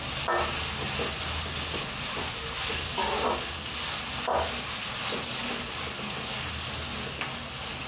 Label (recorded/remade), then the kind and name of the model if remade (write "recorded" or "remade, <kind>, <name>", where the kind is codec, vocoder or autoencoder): recorded